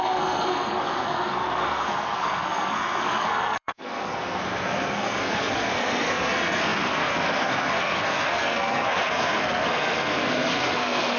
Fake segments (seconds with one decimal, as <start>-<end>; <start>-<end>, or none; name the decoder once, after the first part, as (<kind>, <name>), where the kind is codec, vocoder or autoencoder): 0.0-11.2 (codec, SNAC)